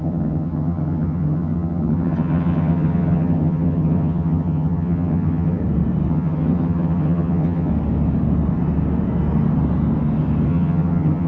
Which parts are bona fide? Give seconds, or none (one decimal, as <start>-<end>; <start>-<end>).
5.6-6.1; 7.7-10.5